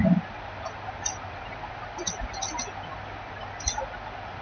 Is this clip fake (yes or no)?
no